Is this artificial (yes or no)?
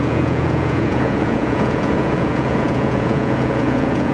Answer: yes